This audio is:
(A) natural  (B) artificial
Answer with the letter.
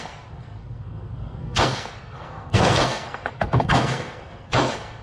B